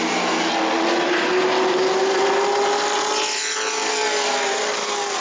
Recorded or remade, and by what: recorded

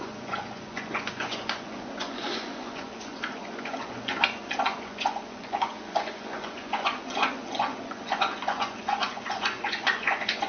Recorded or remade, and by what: remade, vocoder, Vocos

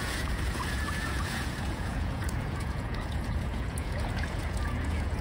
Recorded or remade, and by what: remade, vocoder, Vocos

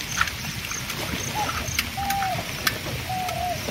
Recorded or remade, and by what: recorded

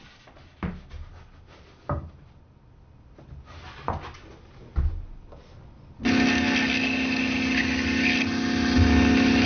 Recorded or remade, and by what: recorded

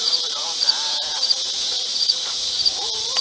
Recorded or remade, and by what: remade, vocoder, Vocos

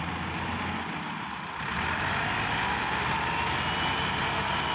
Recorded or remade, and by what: recorded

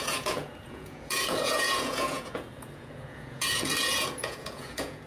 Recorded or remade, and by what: remade, vocoder, Vocos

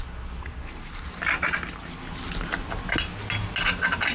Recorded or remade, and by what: recorded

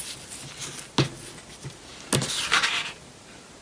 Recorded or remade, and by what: recorded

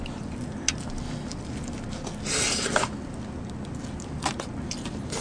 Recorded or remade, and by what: recorded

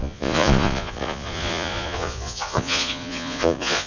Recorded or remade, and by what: remade, vocoder, Vocos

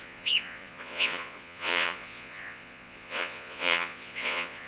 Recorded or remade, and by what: remade, vocoder, Vocos